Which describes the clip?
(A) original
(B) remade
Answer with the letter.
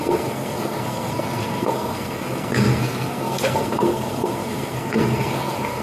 B